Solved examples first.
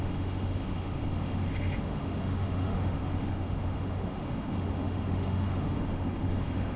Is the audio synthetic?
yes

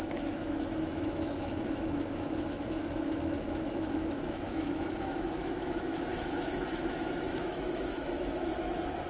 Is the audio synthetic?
yes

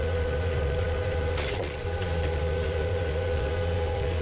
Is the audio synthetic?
yes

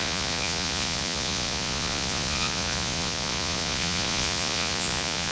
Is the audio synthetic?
yes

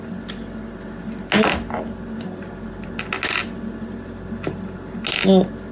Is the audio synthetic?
no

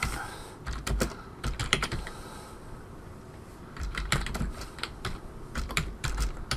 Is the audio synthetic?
yes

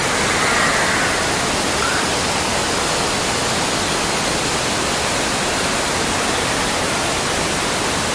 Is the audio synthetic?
no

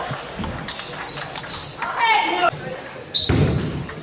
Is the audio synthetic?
no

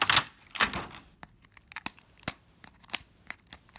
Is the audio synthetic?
no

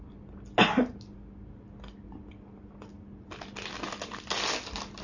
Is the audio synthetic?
no